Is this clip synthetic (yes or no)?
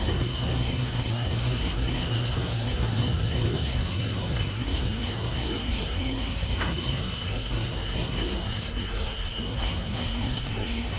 yes